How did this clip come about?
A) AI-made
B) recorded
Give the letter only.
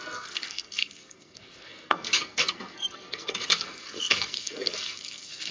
A